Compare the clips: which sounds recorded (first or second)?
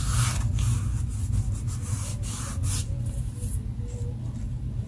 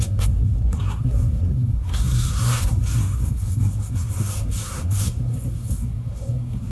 first